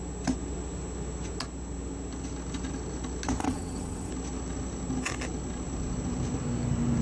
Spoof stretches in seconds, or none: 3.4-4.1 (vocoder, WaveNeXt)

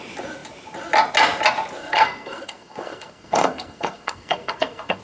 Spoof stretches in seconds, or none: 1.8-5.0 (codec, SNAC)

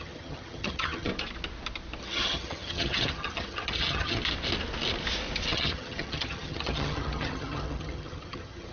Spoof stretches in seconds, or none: 0.0-1.1 (vocoder, HiFi-GAN); 2.0-4.2; 5.5-8.7

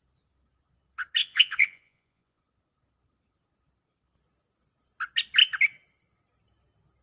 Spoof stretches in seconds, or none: 1.2-2.4 (vocoder, Vocos)

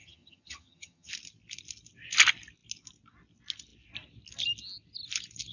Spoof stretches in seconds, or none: 0.0-1.1 (vocoder, HiFi-GAN)

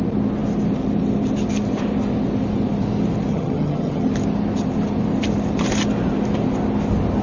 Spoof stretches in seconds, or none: 3.3-4.1 (vocoder, HiFi-GAN)